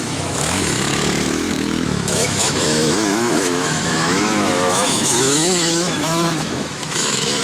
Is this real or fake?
fake